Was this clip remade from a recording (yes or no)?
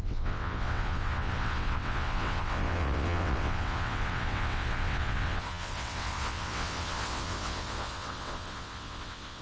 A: yes